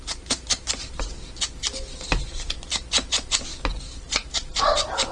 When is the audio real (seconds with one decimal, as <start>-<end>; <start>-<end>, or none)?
0.0-5.1